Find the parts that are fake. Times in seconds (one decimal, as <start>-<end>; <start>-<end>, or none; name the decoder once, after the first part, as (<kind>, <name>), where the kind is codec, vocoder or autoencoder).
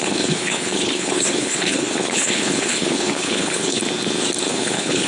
0.0-3.8 (codec, HILCodec); 4.5-5.1